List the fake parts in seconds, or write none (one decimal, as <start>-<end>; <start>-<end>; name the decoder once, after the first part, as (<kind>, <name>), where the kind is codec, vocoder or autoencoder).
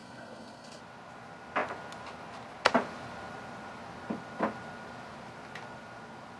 0.0-0.8 (codec, SNAC)